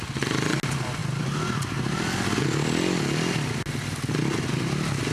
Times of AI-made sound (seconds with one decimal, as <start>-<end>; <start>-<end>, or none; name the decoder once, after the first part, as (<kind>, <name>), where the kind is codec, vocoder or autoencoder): none

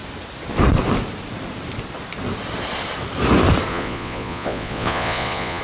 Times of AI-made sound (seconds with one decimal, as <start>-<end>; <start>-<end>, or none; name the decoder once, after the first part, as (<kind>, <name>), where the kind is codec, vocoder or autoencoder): 3.7-5.6 (vocoder, Vocos)

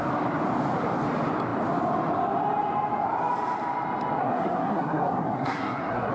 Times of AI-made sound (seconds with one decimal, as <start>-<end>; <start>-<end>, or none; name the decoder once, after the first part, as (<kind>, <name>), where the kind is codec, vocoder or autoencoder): 4.2-6.1 (codec, SNAC)